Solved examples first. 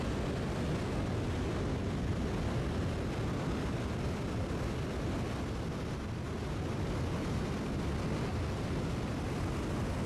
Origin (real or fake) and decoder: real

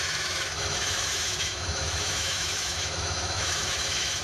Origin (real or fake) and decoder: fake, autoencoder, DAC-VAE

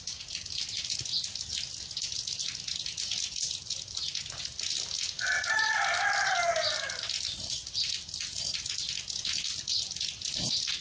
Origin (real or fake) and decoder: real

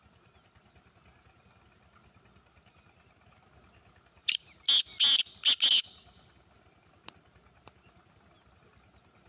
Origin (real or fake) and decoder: real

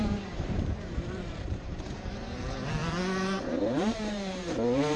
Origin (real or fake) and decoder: fake, vocoder, BigVGAN v2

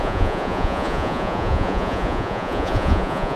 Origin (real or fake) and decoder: fake, vocoder, Vocos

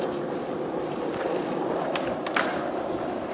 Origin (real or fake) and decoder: real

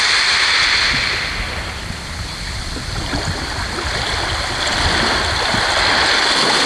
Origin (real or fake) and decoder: real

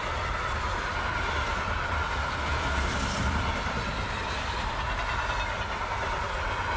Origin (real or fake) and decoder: real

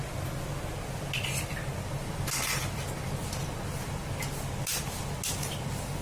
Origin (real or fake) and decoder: real